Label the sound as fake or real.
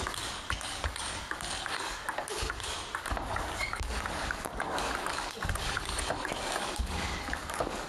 fake